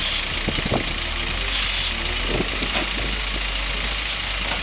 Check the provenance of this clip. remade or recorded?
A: recorded